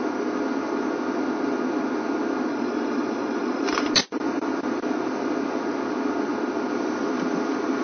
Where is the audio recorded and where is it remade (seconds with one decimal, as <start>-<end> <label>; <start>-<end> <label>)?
0.0-2.5 recorded; 2.5-3.9 remade; 3.9-7.8 recorded